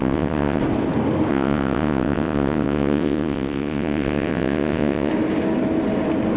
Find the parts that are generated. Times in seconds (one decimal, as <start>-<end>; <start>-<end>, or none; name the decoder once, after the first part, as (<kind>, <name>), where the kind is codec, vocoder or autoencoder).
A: 0.0-0.6 (vocoder, WaveNeXt); 1.3-5.1